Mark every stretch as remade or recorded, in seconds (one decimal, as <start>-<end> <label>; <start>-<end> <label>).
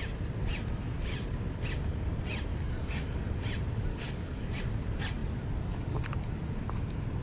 0.0-2.5 recorded; 2.5-3.3 remade; 3.3-3.9 recorded; 3.9-4.6 remade; 4.6-7.2 recorded